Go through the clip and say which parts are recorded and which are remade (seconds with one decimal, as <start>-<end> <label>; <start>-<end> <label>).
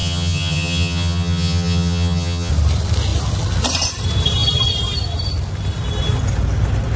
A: 0.0-2.5 remade; 2.5-7.0 recorded